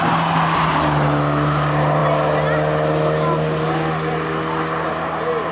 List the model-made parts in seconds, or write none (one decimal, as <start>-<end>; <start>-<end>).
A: none